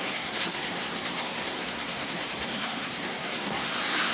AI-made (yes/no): yes